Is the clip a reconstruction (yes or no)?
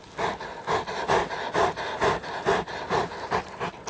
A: no